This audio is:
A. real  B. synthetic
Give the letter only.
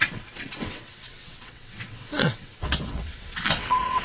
B